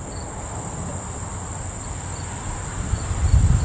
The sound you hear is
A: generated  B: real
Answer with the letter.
B